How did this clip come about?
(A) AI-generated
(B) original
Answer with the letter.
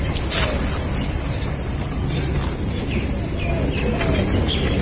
B